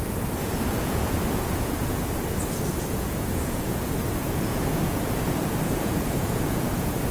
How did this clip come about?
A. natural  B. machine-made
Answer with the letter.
B